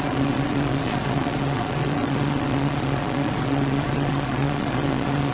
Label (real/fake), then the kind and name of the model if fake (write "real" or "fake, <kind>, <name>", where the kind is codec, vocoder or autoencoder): fake, vocoder, Vocos